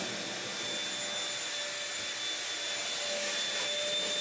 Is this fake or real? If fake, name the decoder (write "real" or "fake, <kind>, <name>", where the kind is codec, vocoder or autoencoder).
real